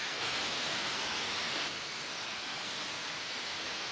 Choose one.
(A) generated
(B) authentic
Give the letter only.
A